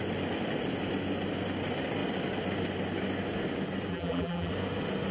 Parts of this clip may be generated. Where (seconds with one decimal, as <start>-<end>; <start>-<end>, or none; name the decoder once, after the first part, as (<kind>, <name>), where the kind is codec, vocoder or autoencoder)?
3.9-4.5 (vocoder, BigVGAN v2)